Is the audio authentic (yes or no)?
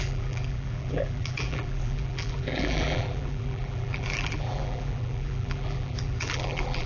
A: no